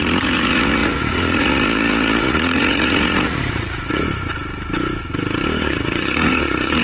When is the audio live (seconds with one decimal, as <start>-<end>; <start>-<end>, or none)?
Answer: 4.0-5.6